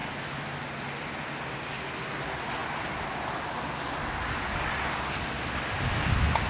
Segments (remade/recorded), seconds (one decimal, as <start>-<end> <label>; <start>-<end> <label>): 0.0-6.5 recorded